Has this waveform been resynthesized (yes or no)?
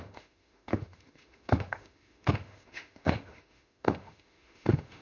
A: yes